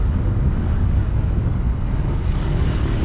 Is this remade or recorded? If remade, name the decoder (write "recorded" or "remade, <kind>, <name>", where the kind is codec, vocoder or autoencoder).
remade, codec, DAC